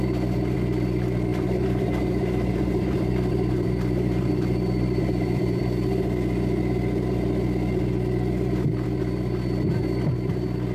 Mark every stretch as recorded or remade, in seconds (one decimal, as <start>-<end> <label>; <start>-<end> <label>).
0.0-1.3 recorded; 1.3-5.6 remade; 5.6-10.7 recorded